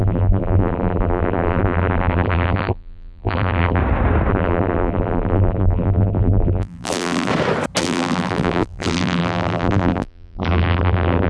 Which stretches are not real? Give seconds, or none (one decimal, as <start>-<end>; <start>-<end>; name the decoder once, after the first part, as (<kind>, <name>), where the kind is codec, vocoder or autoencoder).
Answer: 0.0-3.8 (vocoder, BigVGAN v2); 4.3-7.3; 7.8-11.3